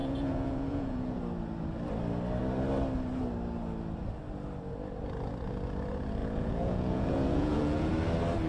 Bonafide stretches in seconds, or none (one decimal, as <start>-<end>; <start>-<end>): 1.2-6.2; 7.9-8.5